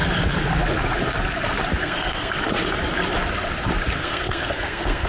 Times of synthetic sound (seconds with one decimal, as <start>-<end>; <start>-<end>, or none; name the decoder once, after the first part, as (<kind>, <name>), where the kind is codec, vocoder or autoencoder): 1.8-2.3 (codec, SNAC); 4.0-5.1